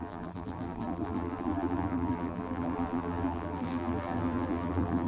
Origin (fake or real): fake